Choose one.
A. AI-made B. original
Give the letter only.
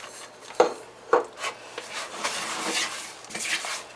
B